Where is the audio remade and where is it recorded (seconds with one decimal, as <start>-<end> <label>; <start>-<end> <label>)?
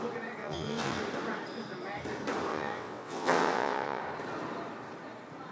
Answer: 0.0-0.4 recorded; 0.4-1.0 remade; 1.0-2.5 recorded; 2.5-4.0 remade; 4.0-5.5 recorded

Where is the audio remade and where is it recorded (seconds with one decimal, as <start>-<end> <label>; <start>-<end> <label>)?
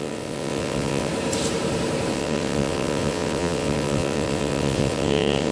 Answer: 0.0-1.1 remade; 1.1-2.1 recorded; 2.1-5.5 remade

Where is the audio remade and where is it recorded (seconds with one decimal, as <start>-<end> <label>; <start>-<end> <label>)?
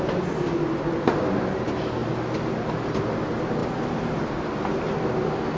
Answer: 0.0-5.6 recorded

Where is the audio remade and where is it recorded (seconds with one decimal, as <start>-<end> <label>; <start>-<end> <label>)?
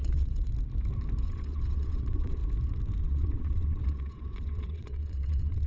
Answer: 0.0-0.5 remade; 0.5-1.2 recorded; 1.2-2.4 remade; 2.4-3.0 recorded; 3.0-5.7 remade